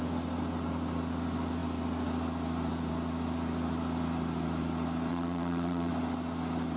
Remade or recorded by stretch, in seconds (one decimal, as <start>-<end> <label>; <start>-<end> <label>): 0.0-5.1 recorded; 5.1-5.9 remade; 5.9-6.8 recorded